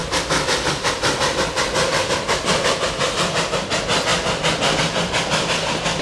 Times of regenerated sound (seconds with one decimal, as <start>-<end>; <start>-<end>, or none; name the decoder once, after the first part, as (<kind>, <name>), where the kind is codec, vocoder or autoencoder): none